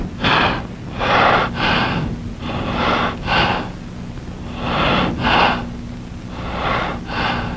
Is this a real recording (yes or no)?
yes